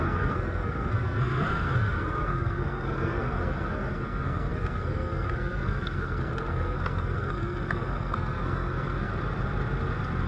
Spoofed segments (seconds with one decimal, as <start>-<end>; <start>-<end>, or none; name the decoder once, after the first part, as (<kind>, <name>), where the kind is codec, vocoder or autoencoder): 0.0-9.1 (codec, SNAC)